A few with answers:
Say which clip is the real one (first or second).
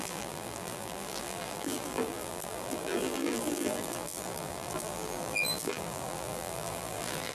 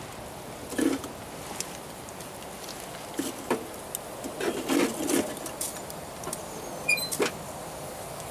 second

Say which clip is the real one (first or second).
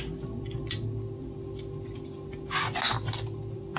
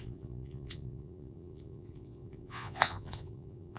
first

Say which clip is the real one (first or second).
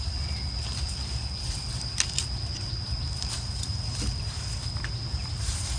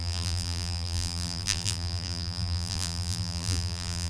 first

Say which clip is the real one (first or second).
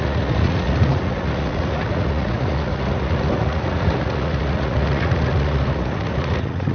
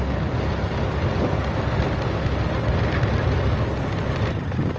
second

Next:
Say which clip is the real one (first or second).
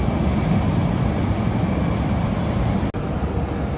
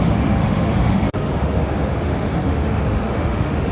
first